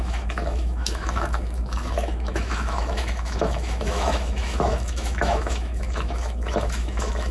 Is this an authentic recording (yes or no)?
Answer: no